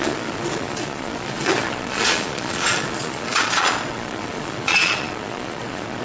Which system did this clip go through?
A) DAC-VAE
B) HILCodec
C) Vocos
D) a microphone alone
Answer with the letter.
C